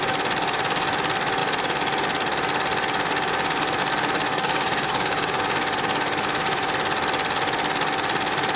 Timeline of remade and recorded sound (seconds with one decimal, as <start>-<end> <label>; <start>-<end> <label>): 0.0-4.3 recorded; 4.3-5.4 remade; 5.4-8.6 recorded